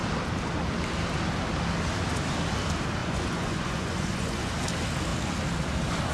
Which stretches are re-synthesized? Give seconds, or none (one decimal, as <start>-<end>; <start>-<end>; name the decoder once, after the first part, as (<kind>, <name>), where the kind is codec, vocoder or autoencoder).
3.0-4.5 (vocoder, Vocos)